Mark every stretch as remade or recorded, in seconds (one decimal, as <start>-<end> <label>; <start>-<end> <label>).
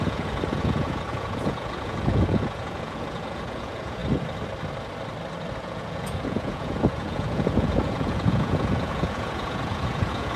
0.0-4.0 remade; 4.0-5.5 recorded; 5.5-10.4 remade